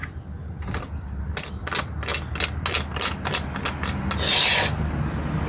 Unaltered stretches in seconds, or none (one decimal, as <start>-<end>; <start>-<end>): 0.0-5.5